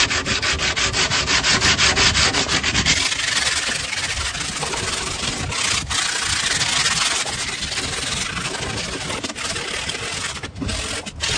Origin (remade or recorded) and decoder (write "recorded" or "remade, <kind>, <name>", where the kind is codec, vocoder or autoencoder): recorded